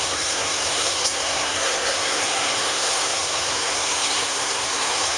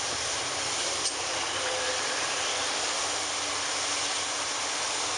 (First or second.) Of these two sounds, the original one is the second